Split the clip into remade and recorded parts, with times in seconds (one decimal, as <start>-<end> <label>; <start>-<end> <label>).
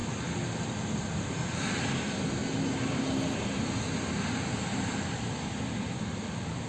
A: 0.0-6.7 recorded